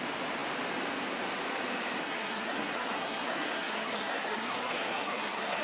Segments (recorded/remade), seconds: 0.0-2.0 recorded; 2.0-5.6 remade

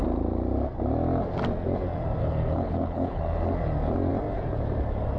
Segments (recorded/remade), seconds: 0.0-2.2 recorded; 2.2-3.2 remade; 3.2-5.2 recorded

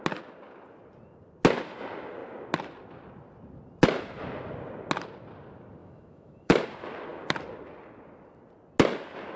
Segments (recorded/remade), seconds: 0.0-5.8 recorded; 5.8-6.6 remade; 6.6-9.4 recorded

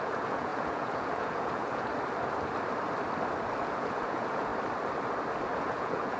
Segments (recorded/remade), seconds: 0.0-1.9 remade; 1.9-3.6 recorded; 3.6-4.5 remade; 4.5-5.6 recorded; 5.6-6.2 remade

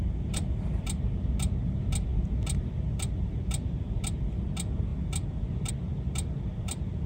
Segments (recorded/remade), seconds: 0.0-7.1 recorded

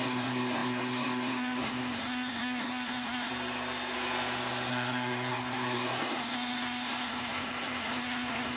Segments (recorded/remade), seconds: 0.0-3.3 remade; 3.3-4.7 recorded; 4.7-8.6 remade

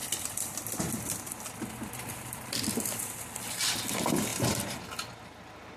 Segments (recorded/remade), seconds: 0.0-5.8 recorded